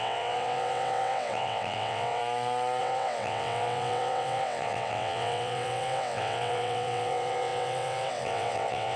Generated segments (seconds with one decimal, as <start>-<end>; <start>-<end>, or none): 0.0-2.2; 2.8-9.0